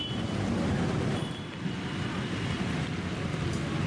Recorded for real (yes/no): yes